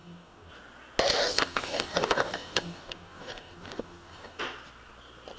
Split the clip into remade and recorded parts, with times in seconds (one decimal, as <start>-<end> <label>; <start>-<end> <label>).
0.0-0.5 remade; 0.5-1.2 recorded; 1.2-4.4 remade; 4.4-5.4 recorded